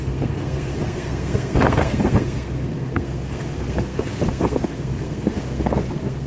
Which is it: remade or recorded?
remade